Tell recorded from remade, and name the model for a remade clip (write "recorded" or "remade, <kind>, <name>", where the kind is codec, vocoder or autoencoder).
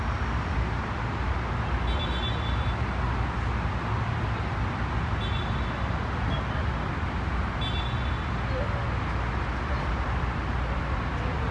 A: recorded